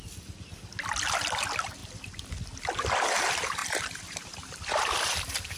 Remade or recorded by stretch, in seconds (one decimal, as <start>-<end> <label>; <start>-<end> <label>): 0.0-3.6 recorded; 3.6-5.0 remade; 5.0-5.6 recorded